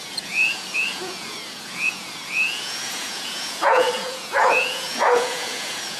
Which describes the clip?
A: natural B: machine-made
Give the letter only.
B